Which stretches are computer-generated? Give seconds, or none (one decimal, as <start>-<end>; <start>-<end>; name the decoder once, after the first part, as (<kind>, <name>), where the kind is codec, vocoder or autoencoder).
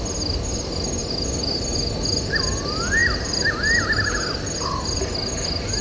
none